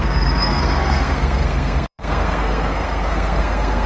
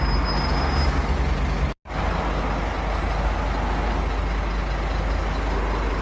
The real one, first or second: second